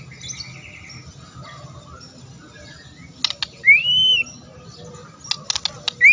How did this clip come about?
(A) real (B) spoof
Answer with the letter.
A